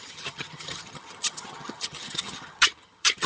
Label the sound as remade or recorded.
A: remade